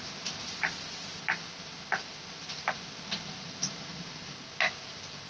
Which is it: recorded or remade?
recorded